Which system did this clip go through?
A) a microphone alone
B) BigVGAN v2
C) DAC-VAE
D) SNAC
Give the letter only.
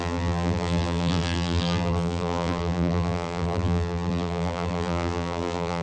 B